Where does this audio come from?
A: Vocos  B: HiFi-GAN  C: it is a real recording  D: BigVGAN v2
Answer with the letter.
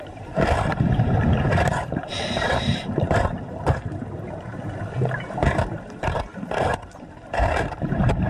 D